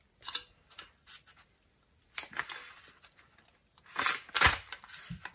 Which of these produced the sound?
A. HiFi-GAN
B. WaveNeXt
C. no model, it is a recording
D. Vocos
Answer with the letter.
C